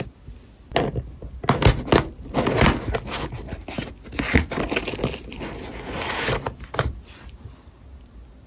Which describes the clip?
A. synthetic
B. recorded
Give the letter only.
B